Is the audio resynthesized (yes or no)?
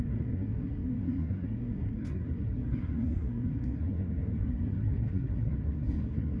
yes